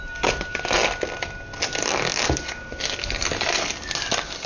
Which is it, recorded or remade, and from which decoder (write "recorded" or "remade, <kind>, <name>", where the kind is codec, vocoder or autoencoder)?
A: recorded